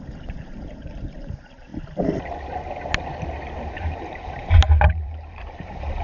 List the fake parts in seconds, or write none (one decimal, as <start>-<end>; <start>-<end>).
0.0-1.7; 3.7-6.0